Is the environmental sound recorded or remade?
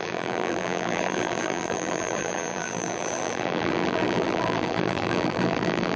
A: remade